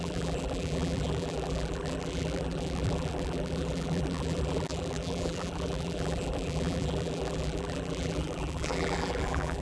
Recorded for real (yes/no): no